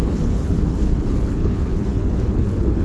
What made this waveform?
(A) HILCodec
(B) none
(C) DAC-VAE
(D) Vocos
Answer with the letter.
A